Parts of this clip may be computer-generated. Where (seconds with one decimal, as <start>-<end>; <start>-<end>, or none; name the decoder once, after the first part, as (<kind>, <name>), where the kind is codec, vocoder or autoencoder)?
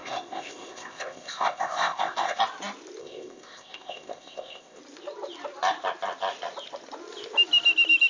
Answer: 0.0-2.4 (codec, ZipCodec); 3.0-4.8